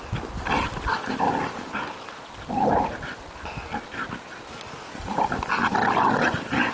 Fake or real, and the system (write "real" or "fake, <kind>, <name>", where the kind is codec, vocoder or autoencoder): real